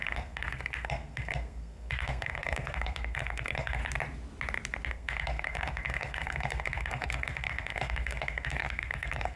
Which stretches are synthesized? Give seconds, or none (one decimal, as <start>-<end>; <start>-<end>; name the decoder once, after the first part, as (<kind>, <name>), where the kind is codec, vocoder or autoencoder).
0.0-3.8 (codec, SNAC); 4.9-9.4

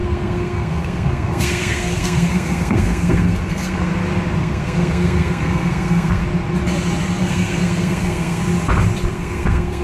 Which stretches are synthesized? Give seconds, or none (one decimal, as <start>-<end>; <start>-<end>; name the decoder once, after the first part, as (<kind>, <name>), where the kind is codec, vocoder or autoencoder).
0.0-3.9 (codec, SNAC); 4.4-6.2; 7.2-8.4; 9.1-9.8

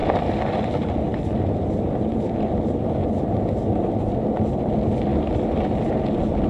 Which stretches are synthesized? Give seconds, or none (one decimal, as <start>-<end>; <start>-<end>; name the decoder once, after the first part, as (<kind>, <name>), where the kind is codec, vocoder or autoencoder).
none